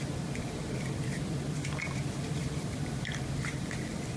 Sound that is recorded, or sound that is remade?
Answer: remade